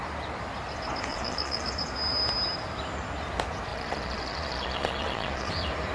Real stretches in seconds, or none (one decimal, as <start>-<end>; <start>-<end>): 0.0-1.1; 1.7-3.7; 5.5-5.9